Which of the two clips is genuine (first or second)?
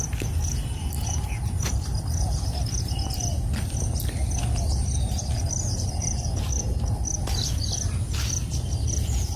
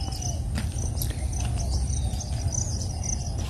second